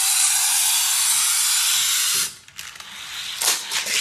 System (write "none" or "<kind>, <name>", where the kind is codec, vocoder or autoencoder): none